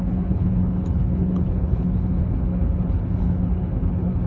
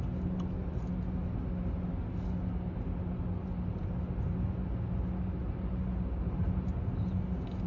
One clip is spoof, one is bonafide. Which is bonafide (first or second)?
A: second